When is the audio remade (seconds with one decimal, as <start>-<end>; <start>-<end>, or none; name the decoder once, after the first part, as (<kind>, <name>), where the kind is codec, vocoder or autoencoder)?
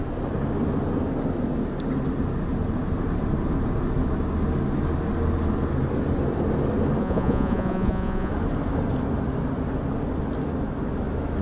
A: 7.0-8.3 (vocoder, Vocos)